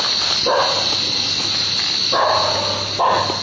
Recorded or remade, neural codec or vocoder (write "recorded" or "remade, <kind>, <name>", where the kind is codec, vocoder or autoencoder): recorded